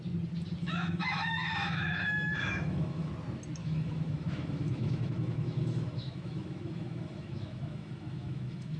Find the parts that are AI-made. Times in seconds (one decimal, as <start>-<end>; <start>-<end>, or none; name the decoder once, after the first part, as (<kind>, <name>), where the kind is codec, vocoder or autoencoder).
0.6-3.1 (autoencoder, DAC-VAE); 3.6-8.8